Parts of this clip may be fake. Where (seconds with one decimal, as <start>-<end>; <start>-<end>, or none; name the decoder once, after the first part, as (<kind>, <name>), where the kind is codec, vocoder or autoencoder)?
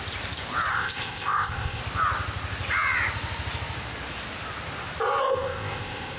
0.7-1.8 (codec, ZipCodec); 5.2-6.2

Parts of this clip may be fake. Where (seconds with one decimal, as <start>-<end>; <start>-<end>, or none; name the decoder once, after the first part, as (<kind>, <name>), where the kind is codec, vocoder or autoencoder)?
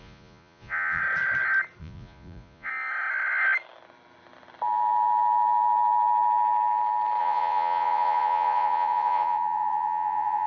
0.0-1.0 (vocoder, Vocos); 1.8-2.7; 7.2-10.5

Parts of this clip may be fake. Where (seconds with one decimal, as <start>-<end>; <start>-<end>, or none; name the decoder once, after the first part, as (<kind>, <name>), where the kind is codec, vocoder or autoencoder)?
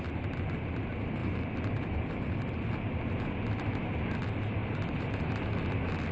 1.2-2.7 (vocoder, BigVGAN v2); 4.6-5.5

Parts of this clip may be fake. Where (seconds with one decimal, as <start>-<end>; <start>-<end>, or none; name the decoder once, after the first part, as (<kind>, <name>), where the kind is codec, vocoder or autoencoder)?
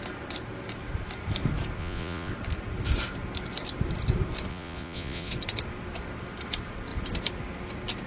1.8-2.3 (vocoder, Vocos); 4.5-5.3